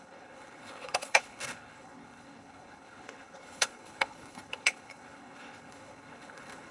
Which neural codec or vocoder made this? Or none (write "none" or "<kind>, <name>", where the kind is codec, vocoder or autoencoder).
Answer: codec, HILCodec